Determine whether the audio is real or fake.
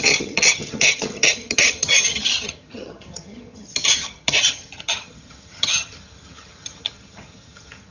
fake